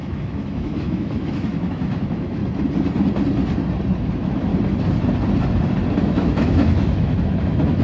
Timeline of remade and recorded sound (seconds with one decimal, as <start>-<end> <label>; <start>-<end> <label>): 0.0-2.4 remade; 2.4-4.0 recorded; 4.0-4.5 remade; 4.5-6.0 recorded; 6.0-7.8 remade